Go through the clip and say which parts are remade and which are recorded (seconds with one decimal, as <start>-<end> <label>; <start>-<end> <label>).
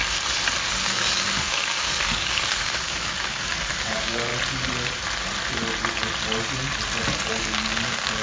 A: 0.0-0.7 recorded; 0.7-4.3 remade; 4.3-7.3 recorded; 7.3-8.2 remade